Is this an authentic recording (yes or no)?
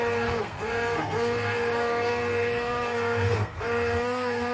no